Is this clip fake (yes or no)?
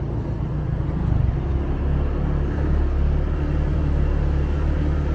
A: no